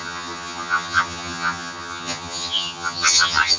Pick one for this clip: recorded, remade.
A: remade